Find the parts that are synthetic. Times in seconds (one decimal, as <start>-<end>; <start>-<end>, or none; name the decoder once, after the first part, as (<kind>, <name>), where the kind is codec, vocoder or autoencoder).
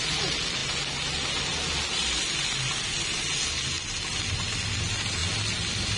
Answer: none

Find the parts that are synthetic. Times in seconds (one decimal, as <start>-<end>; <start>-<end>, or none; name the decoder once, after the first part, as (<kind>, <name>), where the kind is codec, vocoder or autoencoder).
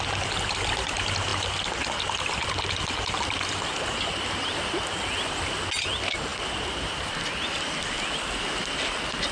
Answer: none